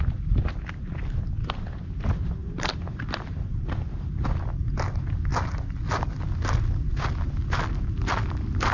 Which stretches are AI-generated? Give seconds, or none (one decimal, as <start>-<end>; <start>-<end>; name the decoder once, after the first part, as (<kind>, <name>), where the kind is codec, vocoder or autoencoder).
2.4-4.4 (vocoder, BigVGAN v2)